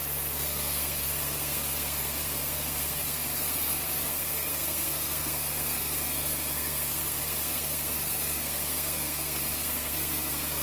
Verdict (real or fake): fake